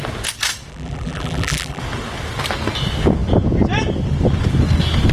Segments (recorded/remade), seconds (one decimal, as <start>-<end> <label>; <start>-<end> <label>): 0.0-0.7 recorded; 0.7-1.8 remade; 1.8-5.1 recorded